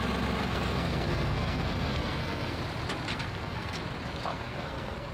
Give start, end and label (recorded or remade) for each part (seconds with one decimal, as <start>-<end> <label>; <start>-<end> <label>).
0.0-0.4 recorded; 0.4-2.6 remade; 2.6-3.1 recorded; 3.1-3.8 remade; 3.8-4.3 recorded; 4.3-5.1 remade